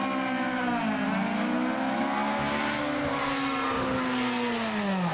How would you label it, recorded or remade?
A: recorded